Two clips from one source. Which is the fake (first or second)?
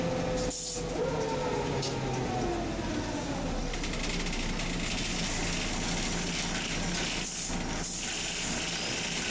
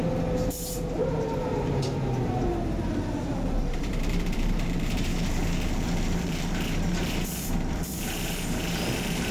second